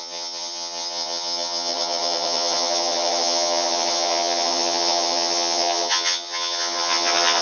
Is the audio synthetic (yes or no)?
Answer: yes